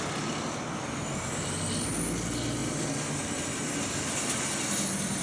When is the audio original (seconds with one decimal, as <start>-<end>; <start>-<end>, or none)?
0.0-5.2